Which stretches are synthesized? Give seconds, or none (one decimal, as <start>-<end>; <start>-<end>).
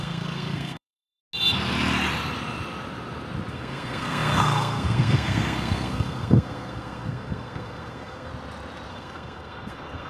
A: 0.0-1.2; 3.5-8.3; 8.9-10.1